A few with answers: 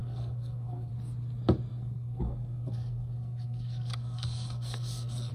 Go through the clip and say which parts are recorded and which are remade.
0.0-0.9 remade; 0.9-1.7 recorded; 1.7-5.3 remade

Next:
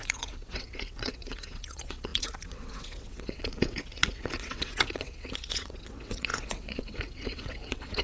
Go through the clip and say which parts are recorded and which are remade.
0.0-8.0 remade

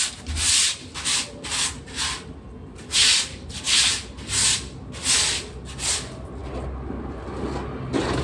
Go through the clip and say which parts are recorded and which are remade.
0.0-8.2 recorded

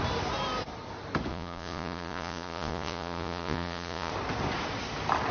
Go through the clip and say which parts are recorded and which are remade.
0.0-1.3 recorded; 1.3-4.1 remade; 4.1-5.3 recorded

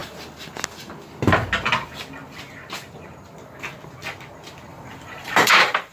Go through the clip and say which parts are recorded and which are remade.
0.0-4.7 recorded; 4.7-5.5 remade; 5.5-5.9 recorded

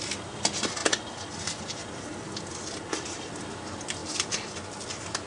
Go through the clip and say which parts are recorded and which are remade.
0.0-5.3 recorded

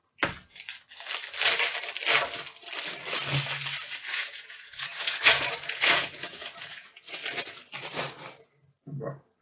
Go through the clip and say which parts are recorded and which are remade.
0.0-4.0 recorded; 4.0-7.2 remade; 7.2-9.4 recorded